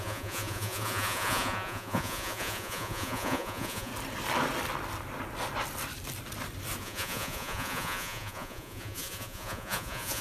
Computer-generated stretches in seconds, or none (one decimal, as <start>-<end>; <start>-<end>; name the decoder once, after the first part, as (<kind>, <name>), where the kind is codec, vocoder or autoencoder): 0.0-3.9 (vocoder, Vocos); 6.8-10.2